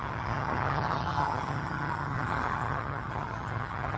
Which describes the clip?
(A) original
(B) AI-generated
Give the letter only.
B